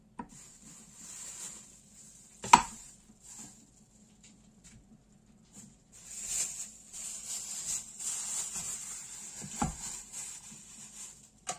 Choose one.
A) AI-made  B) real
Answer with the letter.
B